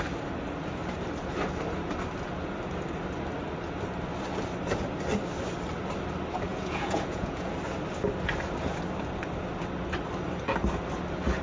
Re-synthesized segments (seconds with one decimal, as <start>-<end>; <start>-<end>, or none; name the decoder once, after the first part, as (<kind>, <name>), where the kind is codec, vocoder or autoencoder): 6.5-7.5 (vocoder, Vocos)